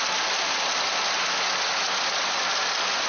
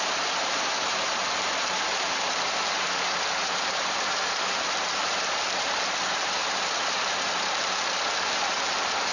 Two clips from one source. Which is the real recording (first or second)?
first